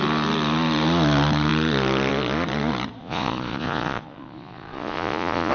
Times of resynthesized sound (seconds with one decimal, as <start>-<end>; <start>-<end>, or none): 3.0-5.5

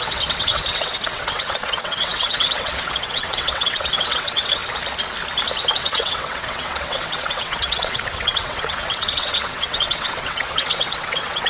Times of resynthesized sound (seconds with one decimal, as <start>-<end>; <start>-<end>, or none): 0.0-4.6; 5.7-11.5

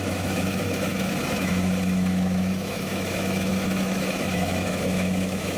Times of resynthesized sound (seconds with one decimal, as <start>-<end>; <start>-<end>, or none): 0.0-5.6